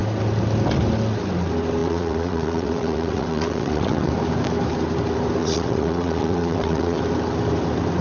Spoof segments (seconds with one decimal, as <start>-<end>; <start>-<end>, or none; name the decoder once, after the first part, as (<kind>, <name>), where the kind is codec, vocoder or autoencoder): 1.8-4.1 (vocoder, WaveNeXt); 5.4-7.0